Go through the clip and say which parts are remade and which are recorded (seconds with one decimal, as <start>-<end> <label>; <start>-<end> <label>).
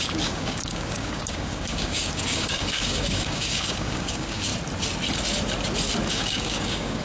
0.0-4.5 remade; 4.5-6.1 recorded; 6.1-7.0 remade